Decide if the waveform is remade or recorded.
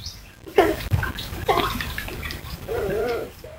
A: remade